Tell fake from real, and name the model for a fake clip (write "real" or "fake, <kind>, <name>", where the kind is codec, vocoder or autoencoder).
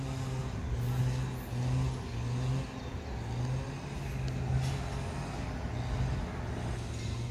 real